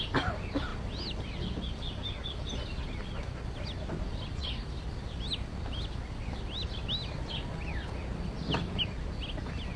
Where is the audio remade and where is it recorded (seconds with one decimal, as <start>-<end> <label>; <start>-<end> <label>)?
0.0-9.8 recorded